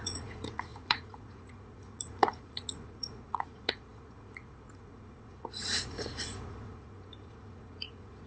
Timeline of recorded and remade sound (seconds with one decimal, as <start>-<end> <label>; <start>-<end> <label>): 0.0-8.3 remade

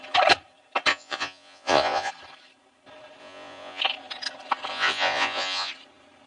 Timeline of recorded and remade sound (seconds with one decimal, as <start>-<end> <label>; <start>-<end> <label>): 0.0-0.9 recorded; 0.9-2.1 remade; 2.1-3.2 recorded; 3.2-3.8 remade; 3.8-4.7 recorded; 4.7-5.7 remade; 5.7-6.3 recorded

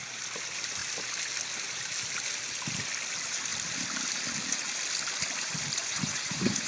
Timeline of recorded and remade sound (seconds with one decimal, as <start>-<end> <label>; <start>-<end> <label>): 0.0-5.8 recorded; 5.8-6.7 remade

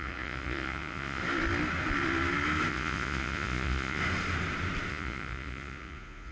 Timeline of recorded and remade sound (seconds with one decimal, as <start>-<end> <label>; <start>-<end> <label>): 0.0-1.2 remade; 1.2-2.7 recorded; 2.7-4.0 remade; 4.0-4.9 recorded; 4.9-6.3 remade

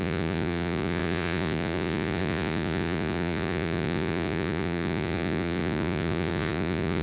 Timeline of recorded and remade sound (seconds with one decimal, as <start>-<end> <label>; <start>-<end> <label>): 0.0-7.0 remade